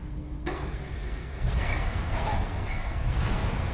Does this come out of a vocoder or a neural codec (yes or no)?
yes